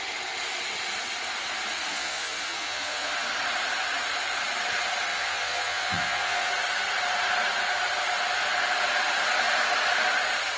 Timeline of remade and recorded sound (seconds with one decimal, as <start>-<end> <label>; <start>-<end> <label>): 0.0-1.9 recorded; 1.9-3.1 remade; 3.1-5.1 recorded; 5.1-6.5 remade; 6.5-10.6 recorded